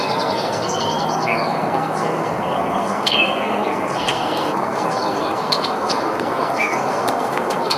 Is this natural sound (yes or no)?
no